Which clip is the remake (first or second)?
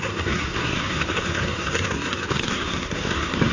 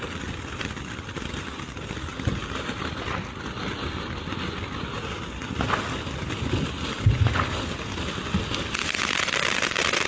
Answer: first